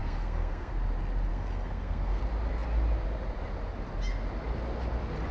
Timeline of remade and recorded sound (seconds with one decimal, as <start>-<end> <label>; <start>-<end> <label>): 0.0-0.7 remade; 0.7-1.3 recorded; 1.3-2.2 remade; 2.2-5.3 recorded